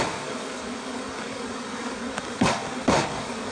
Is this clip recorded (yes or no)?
no